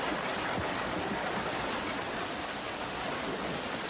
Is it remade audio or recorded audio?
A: recorded